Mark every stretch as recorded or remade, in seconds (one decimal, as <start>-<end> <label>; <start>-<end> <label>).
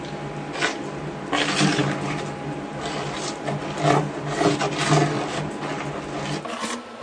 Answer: 0.0-7.0 recorded